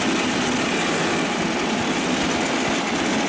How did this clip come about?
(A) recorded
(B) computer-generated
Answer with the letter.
A